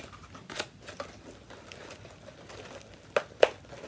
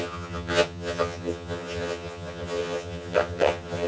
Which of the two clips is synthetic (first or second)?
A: second